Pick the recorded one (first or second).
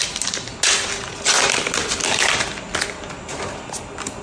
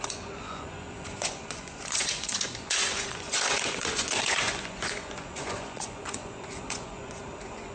first